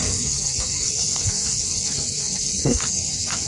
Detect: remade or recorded remade